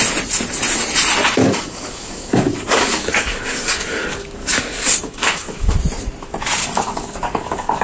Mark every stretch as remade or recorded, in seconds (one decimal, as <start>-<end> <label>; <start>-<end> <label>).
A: 0.0-1.4 recorded; 1.4-5.7 remade; 5.7-6.6 recorded; 6.6-7.8 remade